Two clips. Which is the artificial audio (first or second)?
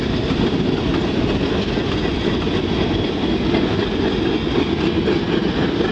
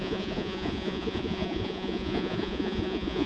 second